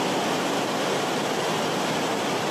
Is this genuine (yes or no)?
yes